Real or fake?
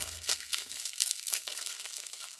fake